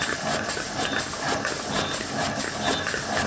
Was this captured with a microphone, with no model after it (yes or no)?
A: yes